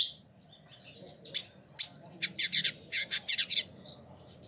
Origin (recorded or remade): recorded